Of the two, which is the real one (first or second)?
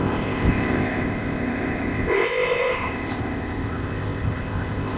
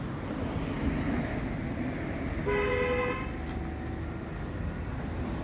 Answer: second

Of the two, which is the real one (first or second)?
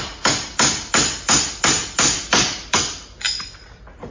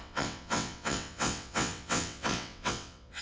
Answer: first